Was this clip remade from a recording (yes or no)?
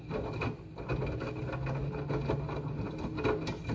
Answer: no